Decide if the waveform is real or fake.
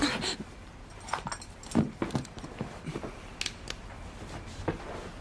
real